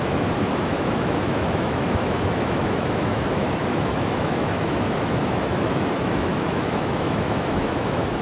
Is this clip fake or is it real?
fake